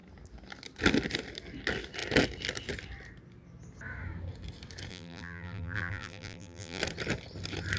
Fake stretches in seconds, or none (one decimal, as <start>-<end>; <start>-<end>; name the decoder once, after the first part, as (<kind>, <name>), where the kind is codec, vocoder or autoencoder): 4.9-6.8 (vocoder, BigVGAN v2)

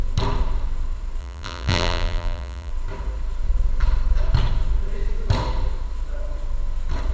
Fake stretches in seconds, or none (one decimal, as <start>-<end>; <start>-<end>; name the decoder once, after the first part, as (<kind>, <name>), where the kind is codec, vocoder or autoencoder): 1.2-2.7 (vocoder, BigVGAN v2)

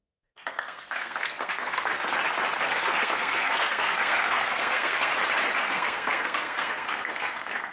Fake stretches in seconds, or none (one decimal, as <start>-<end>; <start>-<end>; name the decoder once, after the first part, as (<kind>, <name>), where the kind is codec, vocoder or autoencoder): 0.0-1.9 (codec, SNAC); 2.6-5.1; 5.6-7.7

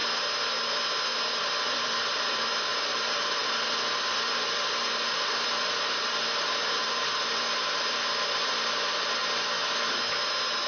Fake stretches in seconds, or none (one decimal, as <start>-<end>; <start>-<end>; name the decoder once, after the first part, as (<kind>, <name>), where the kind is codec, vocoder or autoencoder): 1.4-9.2 (vocoder, BigVGAN v2)

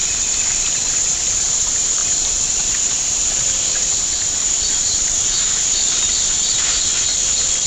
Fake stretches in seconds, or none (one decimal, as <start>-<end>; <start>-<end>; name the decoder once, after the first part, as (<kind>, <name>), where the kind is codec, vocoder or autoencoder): 1.4-7.7 (vocoder, BigVGAN v2)

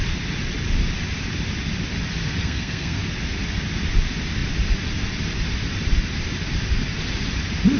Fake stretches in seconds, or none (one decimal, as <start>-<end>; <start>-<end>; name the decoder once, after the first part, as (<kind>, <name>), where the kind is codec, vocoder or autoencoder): 2.4-3.0 (codec, SNAC)

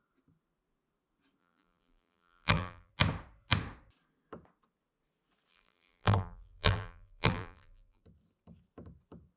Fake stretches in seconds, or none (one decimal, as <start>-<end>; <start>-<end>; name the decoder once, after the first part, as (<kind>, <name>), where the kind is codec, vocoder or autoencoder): 1.4-2.9 (vocoder, BigVGAN v2); 5.5-8.0